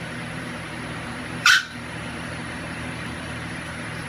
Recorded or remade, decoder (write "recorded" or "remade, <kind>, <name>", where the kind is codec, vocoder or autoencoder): remade, vocoder, BigVGAN v2